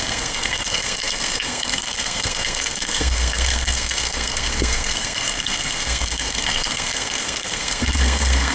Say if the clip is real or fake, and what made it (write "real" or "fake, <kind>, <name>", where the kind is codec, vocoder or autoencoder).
fake, codec, SNAC